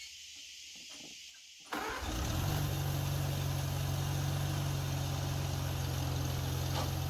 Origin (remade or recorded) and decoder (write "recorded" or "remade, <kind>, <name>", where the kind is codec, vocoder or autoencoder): recorded